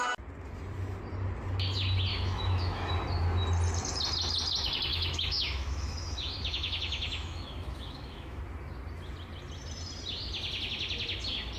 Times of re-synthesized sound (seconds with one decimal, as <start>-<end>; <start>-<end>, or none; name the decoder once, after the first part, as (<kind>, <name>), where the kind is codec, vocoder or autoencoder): 2.1-2.9 (autoencoder, DAC-VAE); 4.9-8.4